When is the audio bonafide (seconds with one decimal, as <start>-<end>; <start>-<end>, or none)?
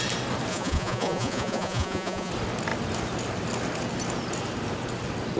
0.0-0.5; 2.3-5.4